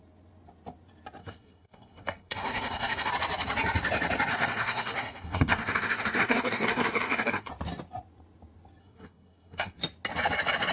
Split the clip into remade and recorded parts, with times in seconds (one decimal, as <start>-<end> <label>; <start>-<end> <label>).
0.0-1.2 recorded; 1.2-3.1 remade; 3.1-4.3 recorded; 4.3-7.5 remade; 7.5-8.8 recorded; 8.8-9.8 remade; 9.8-10.7 recorded